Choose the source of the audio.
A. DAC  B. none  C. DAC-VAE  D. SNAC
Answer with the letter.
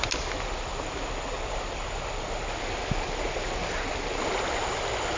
B